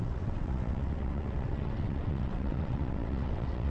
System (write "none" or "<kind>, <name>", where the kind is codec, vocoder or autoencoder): vocoder, WaveNeXt